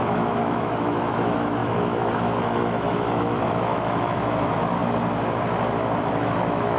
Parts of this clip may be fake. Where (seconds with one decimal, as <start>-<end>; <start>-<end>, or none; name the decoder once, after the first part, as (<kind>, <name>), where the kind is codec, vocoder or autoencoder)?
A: 0.0-4.8 (autoencoder, DAC-VAE); 6.0-6.8

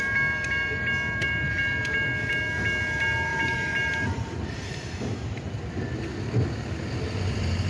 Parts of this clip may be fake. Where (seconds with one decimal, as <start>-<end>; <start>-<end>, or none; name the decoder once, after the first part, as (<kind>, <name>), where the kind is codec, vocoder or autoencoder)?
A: 3.3-5.8 (vocoder, BigVGAN v2)

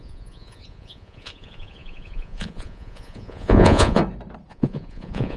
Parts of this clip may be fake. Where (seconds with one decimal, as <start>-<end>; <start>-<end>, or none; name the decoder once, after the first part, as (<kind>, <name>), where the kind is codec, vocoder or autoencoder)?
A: 0.0-4.0 (vocoder, Vocos); 4.5-5.4

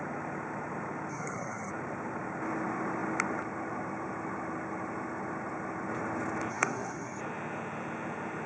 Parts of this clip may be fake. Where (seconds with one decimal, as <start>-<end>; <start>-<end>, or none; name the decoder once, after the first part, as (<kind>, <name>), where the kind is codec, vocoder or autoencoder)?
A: 1.1-1.7 (codec, SNAC); 6.5-7.2

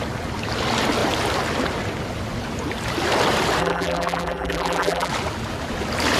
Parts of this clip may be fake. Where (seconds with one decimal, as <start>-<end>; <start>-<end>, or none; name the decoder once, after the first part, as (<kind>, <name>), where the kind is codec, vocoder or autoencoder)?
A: 3.6-5.1 (vocoder, BigVGAN v2)

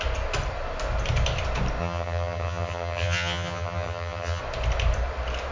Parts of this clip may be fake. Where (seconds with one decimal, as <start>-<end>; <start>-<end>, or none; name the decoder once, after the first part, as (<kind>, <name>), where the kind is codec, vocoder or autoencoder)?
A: 1.8-4.4 (vocoder, HiFi-GAN)

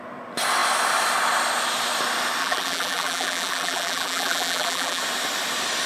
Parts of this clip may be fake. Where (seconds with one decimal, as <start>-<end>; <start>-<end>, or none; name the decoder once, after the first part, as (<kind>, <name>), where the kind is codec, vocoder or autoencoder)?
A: 2.4-5.0 (vocoder, BigVGAN v2)

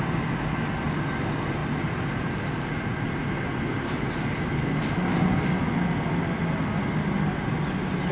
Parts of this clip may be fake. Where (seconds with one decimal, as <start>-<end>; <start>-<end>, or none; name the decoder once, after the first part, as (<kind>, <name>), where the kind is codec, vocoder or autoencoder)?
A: 1.6-2.4 (vocoder, BigVGAN v2)